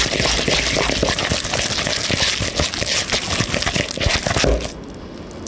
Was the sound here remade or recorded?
recorded